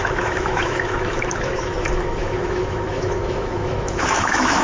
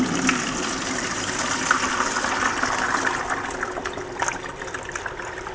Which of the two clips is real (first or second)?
second